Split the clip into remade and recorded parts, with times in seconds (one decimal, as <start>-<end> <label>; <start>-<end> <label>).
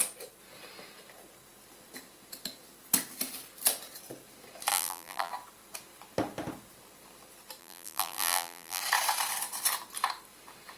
0.0-4.7 recorded; 4.7-5.3 remade; 5.3-7.6 recorded; 7.6-8.8 remade; 8.8-10.8 recorded